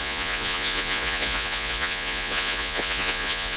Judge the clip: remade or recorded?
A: remade